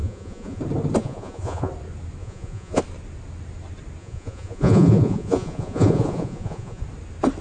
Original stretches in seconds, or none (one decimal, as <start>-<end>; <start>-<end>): 0.6-1.0; 1.7-2.2; 2.8-4.0; 6.8-7.4